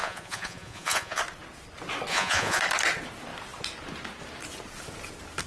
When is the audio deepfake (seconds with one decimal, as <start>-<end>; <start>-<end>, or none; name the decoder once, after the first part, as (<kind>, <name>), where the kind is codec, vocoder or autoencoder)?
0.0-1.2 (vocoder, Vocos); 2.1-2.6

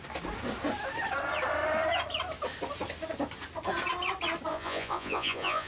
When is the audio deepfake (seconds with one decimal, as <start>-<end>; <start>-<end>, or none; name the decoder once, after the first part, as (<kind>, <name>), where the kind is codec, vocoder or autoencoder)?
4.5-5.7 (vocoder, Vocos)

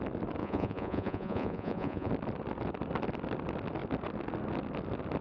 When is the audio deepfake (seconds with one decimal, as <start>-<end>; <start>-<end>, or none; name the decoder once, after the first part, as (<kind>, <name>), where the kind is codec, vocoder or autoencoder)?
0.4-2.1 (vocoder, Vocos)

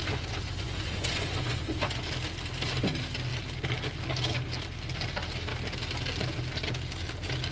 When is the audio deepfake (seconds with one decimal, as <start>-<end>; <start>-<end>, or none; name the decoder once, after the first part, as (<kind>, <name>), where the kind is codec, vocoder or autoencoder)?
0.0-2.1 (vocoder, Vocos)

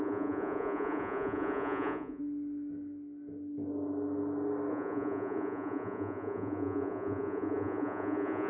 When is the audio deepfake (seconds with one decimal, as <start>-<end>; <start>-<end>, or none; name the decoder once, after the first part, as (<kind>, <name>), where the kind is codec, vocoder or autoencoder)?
0.0-2.2 (vocoder, Vocos); 4.7-8.5

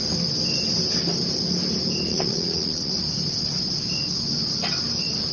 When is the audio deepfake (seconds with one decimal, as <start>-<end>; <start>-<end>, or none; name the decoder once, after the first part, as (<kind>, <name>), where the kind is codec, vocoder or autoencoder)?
2.1-2.9 (vocoder, Vocos)